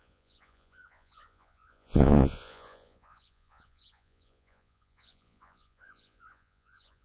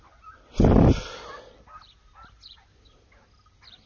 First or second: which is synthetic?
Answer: first